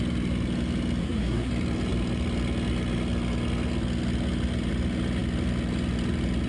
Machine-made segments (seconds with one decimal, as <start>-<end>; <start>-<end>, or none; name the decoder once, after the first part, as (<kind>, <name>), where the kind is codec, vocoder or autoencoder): 1.0-1.5 (codec, SNAC)